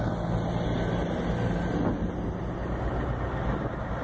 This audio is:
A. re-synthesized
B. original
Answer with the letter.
B